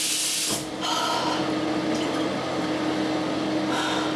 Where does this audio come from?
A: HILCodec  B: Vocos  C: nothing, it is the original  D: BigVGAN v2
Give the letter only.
C